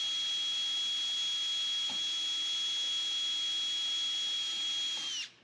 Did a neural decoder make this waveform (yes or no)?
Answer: no